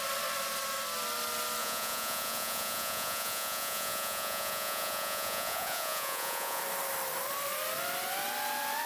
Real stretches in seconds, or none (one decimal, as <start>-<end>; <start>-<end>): 0.0-1.6; 6.6-8.9